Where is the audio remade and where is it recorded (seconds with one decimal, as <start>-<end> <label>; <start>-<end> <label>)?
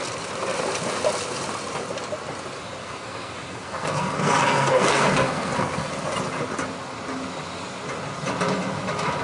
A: 0.0-2.8 recorded; 2.8-5.9 remade; 5.9-9.2 recorded